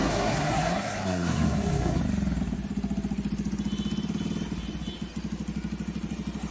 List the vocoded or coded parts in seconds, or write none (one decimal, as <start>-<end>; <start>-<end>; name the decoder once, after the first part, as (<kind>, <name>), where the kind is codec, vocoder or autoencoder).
0.0-2.0 (codec, SNAC)